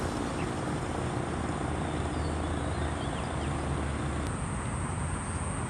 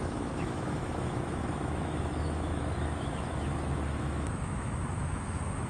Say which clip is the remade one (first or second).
second